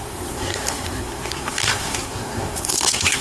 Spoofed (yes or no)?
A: yes